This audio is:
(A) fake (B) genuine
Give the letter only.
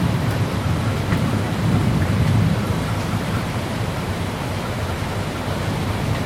A